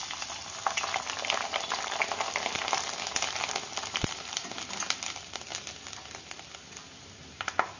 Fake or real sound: real